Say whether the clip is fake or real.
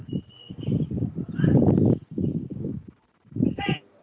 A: fake